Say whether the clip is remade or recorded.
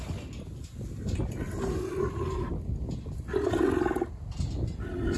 recorded